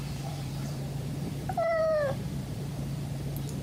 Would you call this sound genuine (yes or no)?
no